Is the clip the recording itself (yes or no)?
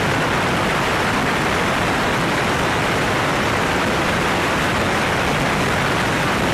yes